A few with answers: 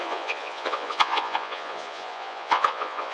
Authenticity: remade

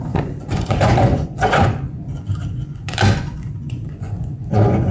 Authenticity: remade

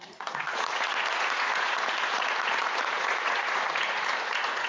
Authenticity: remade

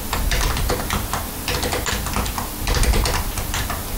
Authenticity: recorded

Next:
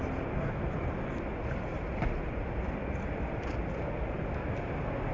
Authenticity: recorded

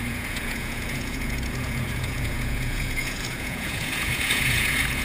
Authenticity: remade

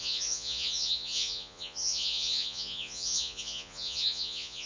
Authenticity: remade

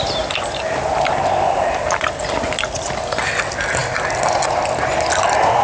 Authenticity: recorded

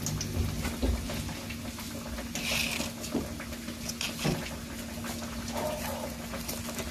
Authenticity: recorded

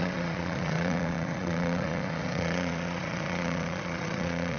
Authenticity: remade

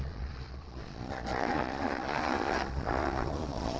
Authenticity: remade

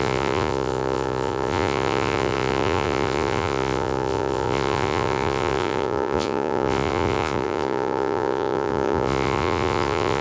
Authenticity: remade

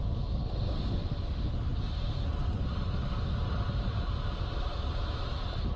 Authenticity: recorded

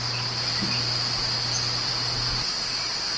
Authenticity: recorded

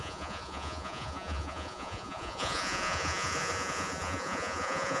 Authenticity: remade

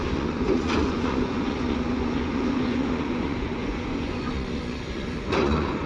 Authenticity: remade